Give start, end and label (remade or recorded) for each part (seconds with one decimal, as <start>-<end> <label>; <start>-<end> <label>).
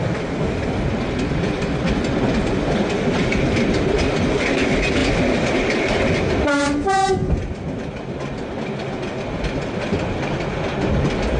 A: 0.0-11.4 recorded